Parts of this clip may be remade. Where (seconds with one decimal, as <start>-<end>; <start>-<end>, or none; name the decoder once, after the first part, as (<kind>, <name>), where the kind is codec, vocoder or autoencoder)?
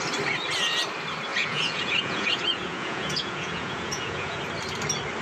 1.3-4.4 (vocoder, Vocos)